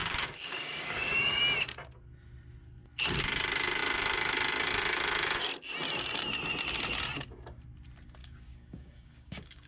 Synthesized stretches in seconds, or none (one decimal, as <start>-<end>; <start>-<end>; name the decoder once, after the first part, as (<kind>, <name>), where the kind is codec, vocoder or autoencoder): 0.0-1.4 (codec, DAC); 8.2-9.7